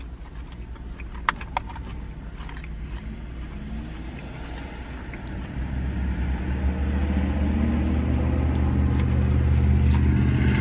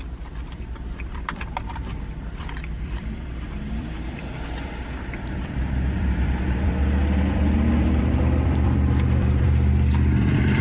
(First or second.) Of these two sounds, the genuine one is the first